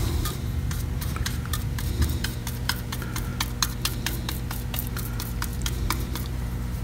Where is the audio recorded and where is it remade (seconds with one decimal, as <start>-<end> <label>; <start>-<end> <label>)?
0.0-3.3 remade; 3.3-3.9 recorded; 3.9-6.8 remade